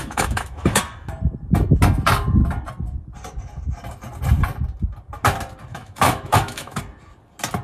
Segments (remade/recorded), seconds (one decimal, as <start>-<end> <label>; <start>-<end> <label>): 0.0-0.8 remade; 0.8-5.7 recorded; 5.7-6.8 remade; 6.8-7.6 recorded